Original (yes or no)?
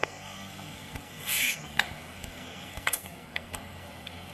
no